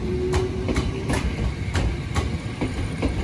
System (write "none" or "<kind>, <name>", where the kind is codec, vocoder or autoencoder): none